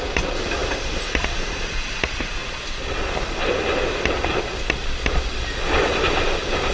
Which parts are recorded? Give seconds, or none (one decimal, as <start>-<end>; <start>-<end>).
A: 0.0-0.6; 1.9-6.7